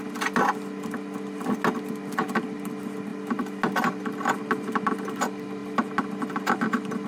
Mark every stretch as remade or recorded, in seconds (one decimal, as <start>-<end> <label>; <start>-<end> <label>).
0.0-7.1 recorded